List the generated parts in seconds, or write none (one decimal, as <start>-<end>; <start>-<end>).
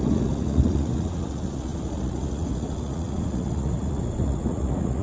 0.0-5.0